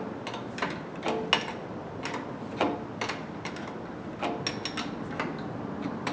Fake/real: real